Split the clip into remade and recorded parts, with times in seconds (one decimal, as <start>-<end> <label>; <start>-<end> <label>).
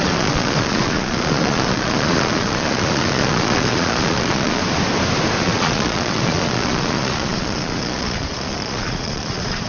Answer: 0.0-4.6 remade; 4.6-5.4 recorded; 5.4-9.7 remade